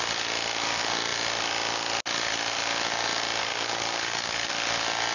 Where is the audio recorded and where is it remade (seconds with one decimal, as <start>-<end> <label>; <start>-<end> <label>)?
0.0-3.4 recorded; 3.4-4.5 remade; 4.5-5.1 recorded

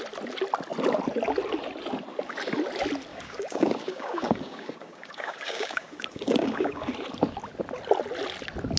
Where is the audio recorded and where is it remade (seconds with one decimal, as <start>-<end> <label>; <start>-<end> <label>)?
0.0-3.1 recorded; 3.1-6.9 remade; 6.9-8.8 recorded

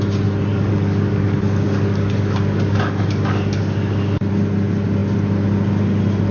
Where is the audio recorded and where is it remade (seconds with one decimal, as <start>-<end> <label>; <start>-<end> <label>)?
0.0-0.5 recorded; 0.5-4.3 remade; 4.3-6.3 recorded

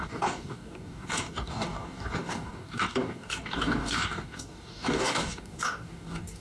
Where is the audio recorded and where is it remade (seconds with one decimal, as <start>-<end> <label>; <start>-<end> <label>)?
0.0-6.4 remade

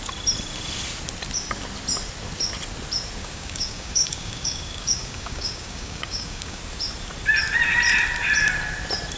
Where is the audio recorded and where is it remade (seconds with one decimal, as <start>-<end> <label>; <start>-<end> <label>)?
0.0-3.2 recorded; 3.2-6.6 remade; 6.6-9.2 recorded

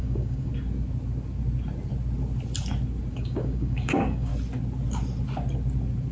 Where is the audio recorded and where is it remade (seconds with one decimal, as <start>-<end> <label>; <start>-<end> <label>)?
0.0-0.5 remade; 0.5-3.1 recorded; 3.1-4.3 remade; 4.3-6.1 recorded

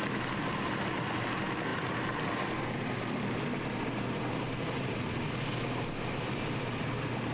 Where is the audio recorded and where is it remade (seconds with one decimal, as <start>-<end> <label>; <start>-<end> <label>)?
0.0-7.3 recorded

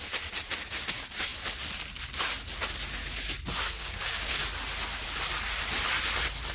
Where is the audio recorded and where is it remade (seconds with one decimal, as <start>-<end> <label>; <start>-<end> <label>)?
0.0-3.8 recorded; 3.8-4.4 remade; 4.4-6.5 recorded